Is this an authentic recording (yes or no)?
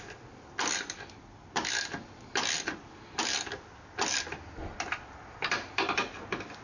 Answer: yes